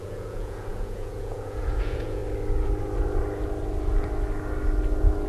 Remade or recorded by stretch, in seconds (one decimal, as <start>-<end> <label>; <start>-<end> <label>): 0.0-2.2 remade; 2.2-5.3 recorded